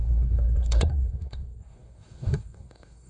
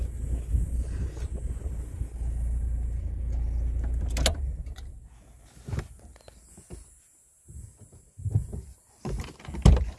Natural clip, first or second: second